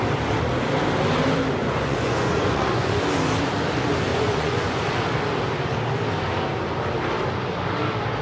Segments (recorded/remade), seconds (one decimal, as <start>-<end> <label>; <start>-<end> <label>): 0.0-1.6 recorded; 1.6-3.0 remade; 3.0-4.1 recorded; 4.1-4.8 remade; 4.8-8.2 recorded